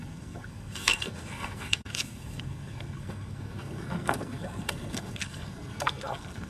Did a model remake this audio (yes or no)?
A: yes